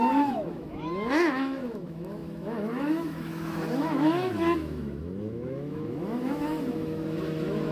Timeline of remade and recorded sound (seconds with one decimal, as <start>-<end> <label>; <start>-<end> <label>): 0.0-7.7 remade